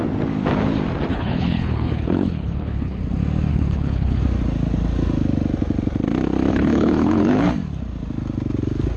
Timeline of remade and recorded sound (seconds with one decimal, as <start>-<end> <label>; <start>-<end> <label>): 0.0-1.1 recorded; 1.1-3.0 remade; 3.0-3.5 recorded; 3.5-4.2 remade; 4.2-6.5 recorded; 6.5-7.5 remade; 7.5-9.0 recorded